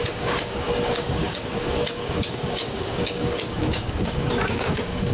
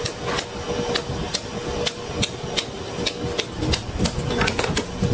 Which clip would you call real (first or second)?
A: second